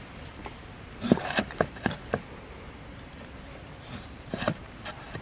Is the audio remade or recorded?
remade